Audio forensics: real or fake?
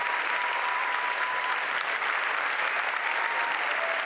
real